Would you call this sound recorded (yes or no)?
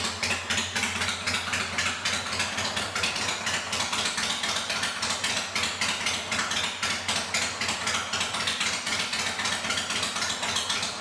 yes